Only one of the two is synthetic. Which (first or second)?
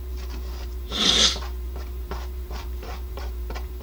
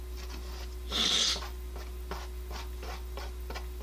first